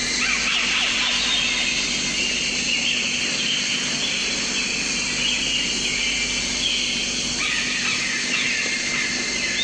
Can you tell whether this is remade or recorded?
recorded